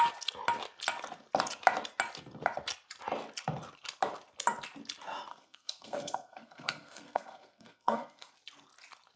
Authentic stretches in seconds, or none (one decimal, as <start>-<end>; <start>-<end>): 0.0-5.3; 8.3-9.2